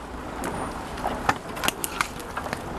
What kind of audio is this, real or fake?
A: real